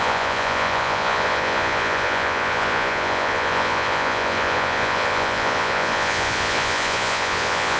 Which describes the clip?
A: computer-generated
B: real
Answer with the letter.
A